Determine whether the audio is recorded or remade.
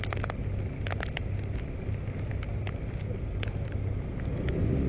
recorded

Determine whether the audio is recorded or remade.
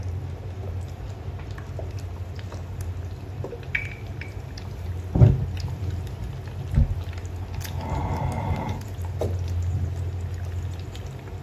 recorded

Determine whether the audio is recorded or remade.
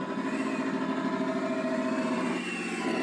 recorded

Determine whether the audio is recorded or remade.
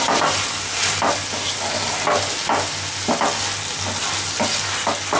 recorded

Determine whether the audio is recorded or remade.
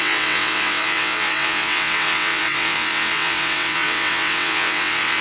remade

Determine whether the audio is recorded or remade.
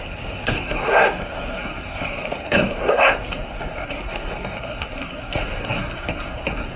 remade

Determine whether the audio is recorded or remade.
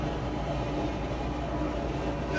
recorded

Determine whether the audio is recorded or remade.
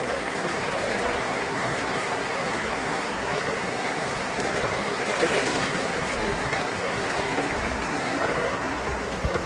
remade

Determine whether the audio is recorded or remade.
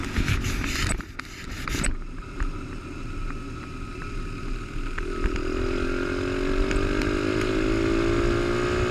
recorded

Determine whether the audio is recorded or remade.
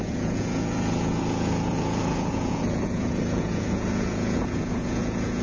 remade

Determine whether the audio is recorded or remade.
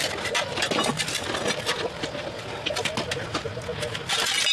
recorded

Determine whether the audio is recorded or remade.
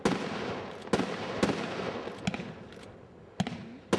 recorded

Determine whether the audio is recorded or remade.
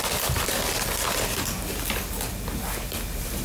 recorded